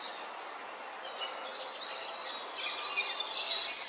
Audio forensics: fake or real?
real